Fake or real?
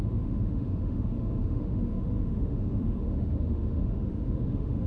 fake